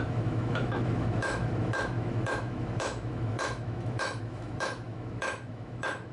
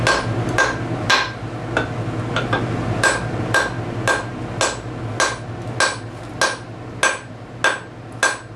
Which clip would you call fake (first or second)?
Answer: first